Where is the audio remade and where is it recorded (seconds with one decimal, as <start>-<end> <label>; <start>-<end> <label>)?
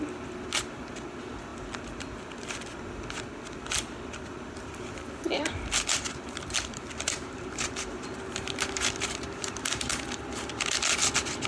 0.0-5.9 recorded; 5.9-9.9 remade; 9.9-11.5 recorded